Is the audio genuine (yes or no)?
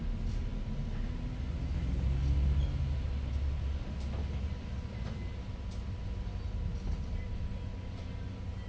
yes